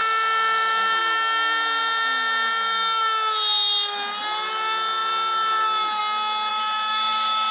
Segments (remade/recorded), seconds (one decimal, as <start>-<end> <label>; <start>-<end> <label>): 0.0-6.5 recorded; 6.5-7.5 remade